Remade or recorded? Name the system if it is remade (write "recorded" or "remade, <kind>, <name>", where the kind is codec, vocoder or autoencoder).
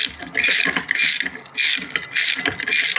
recorded